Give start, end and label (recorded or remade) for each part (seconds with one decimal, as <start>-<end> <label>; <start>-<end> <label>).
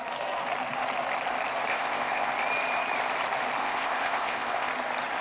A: 0.0-1.7 recorded; 1.7-2.3 remade; 2.3-3.6 recorded; 3.6-4.7 remade; 4.7-5.2 recorded